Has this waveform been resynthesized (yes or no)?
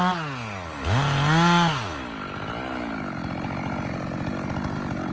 no